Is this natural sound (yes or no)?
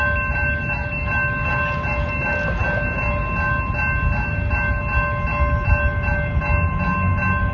yes